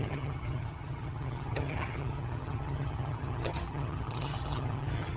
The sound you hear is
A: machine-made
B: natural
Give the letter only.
A